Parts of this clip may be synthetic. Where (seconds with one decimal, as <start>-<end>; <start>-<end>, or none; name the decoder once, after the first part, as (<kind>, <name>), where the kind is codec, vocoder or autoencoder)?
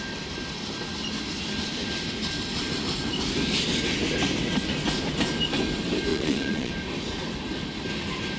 6.1-6.7 (vocoder, Vocos)